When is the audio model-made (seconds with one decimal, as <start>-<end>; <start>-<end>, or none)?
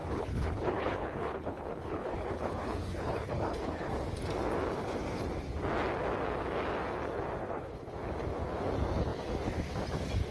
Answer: 0.0-3.9; 7.4-7.9